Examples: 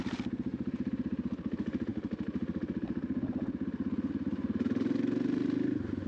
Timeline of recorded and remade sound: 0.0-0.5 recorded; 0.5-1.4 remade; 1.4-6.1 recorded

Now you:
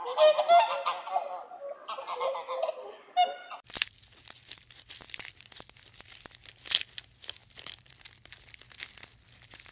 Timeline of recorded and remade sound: 0.0-7.4 recorded; 7.4-8.3 remade; 8.3-9.7 recorded

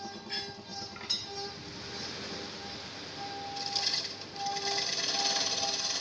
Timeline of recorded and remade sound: 0.0-6.0 recorded

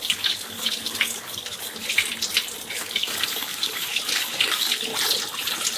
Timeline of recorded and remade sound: 0.0-1.8 remade; 1.8-2.7 recorded; 2.7-4.9 remade; 4.9-5.8 recorded